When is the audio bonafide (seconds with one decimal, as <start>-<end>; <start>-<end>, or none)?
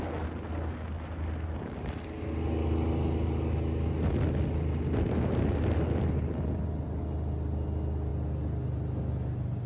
0.0-9.7